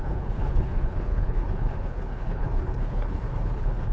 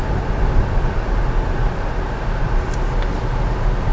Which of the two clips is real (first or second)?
second